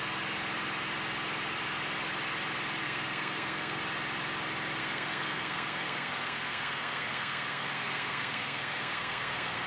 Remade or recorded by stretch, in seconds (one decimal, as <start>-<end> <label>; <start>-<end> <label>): 0.0-2.8 recorded; 2.8-3.8 remade; 3.8-4.8 recorded; 4.8-9.7 remade